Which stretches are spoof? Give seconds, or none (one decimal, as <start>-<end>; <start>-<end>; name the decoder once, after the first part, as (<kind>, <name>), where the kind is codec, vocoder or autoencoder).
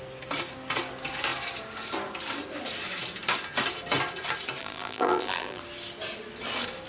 4.6-5.6 (vocoder, BigVGAN v2)